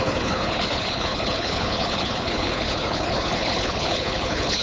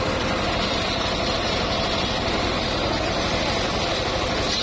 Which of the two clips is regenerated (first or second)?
first